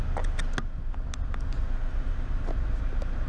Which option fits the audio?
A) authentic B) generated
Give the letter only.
A